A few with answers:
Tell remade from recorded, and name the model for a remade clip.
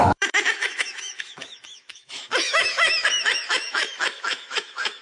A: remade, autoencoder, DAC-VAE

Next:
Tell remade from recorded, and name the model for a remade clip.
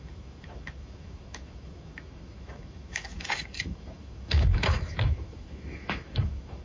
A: remade, autoencoder, DAC-VAE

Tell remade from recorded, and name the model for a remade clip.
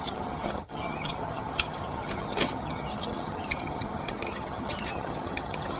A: remade, vocoder, HiFi-GAN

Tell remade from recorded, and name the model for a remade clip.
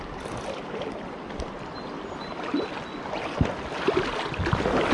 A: recorded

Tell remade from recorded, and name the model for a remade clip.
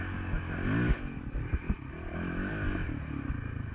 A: recorded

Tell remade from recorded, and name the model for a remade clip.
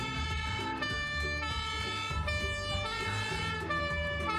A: remade, vocoder, BigVGAN v2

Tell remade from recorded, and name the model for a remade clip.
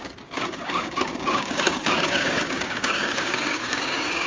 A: remade, codec, DAC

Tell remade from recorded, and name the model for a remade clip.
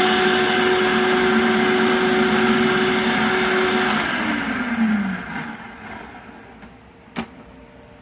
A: recorded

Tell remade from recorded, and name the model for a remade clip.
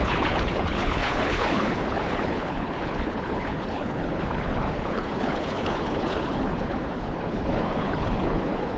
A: remade, codec, HILCodec